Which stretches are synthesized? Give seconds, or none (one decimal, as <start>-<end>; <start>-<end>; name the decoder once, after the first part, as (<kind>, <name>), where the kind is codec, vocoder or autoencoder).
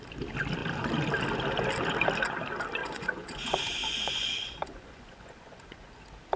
2.8-6.0 (vocoder, Vocos)